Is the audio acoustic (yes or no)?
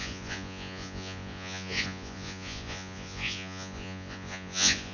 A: no